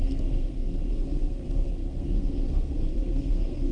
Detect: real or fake fake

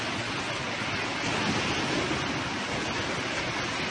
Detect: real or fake real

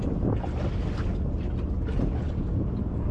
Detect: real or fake real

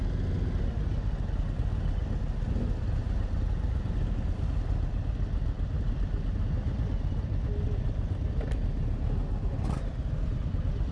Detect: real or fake real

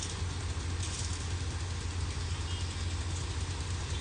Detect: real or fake real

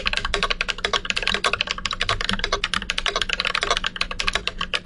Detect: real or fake real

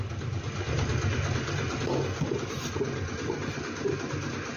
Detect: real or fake real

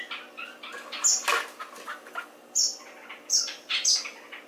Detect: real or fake real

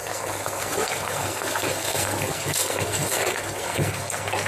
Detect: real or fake fake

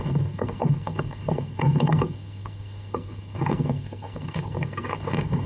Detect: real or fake fake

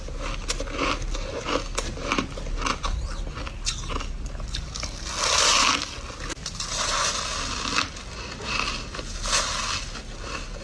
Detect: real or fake real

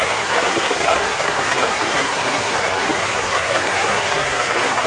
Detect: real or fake fake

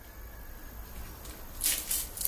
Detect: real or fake real